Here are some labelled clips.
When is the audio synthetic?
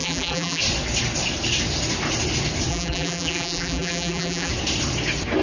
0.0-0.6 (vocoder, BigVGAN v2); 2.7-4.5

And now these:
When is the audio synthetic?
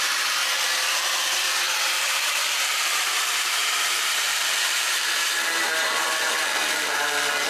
0.0-7.5 (vocoder, BigVGAN v2)